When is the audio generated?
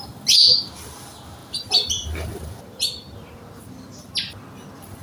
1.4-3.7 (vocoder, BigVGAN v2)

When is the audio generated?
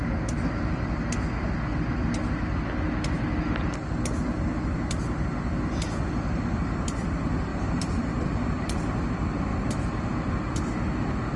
7.5-9.1 (vocoder, BigVGAN v2); 9.5-10.1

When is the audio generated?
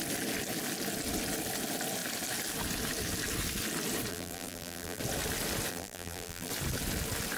4.1-5.0 (vocoder, BigVGAN v2); 5.7-6.5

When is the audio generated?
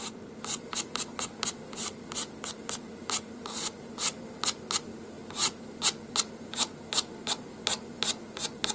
none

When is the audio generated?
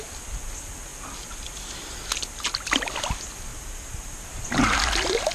3.5-4.5 (vocoder, BigVGAN v2)